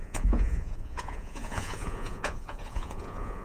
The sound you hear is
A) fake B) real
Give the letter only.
A